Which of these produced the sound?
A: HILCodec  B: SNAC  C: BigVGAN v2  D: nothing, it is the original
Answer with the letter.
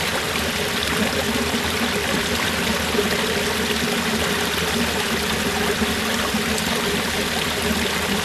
D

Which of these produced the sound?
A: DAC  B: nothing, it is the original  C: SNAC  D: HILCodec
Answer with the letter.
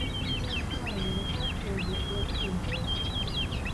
B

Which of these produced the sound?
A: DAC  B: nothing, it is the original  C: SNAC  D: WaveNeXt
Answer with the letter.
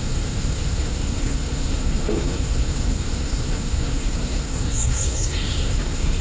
C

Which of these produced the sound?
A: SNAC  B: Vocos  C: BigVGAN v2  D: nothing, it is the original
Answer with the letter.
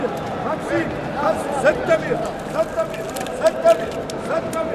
D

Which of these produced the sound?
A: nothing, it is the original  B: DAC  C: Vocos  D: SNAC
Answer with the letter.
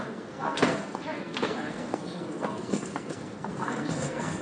D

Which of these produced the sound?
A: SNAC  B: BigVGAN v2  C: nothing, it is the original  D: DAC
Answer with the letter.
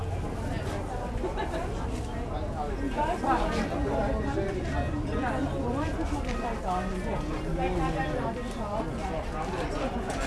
C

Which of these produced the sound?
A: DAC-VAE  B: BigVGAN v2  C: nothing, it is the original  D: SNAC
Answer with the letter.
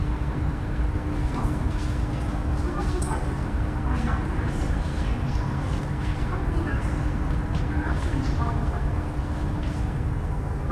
D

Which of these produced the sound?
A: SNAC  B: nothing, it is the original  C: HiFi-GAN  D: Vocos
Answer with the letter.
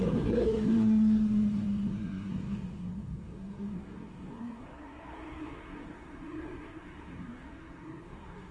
A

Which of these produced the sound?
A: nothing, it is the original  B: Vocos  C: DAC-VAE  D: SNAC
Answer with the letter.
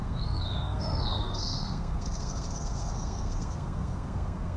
D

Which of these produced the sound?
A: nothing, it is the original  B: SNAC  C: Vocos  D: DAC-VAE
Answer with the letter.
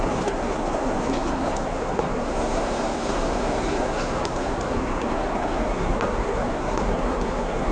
B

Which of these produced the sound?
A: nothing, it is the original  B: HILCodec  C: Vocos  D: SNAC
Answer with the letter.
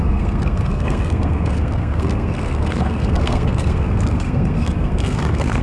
D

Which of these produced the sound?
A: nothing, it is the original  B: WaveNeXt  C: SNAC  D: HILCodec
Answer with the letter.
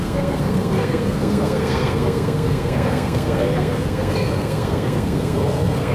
C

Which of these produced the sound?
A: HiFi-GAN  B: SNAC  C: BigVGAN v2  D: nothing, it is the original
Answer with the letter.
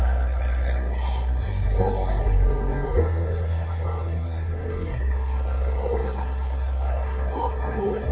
B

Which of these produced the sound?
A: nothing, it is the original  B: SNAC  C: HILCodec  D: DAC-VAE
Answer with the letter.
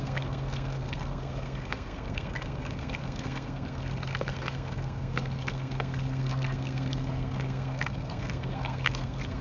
B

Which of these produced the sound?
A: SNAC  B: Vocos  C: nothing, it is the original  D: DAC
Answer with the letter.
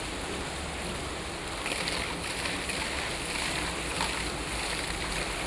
C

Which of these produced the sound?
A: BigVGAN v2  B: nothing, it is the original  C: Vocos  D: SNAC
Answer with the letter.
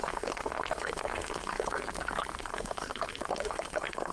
D